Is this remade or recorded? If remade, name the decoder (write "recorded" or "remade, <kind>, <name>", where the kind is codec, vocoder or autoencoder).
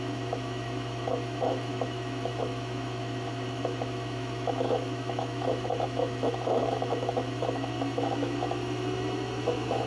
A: remade, autoencoder, DAC-VAE